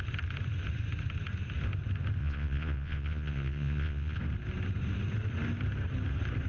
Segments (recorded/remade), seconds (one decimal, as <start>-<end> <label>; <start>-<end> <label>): 0.0-2.2 recorded; 2.2-4.2 remade; 4.2-6.5 recorded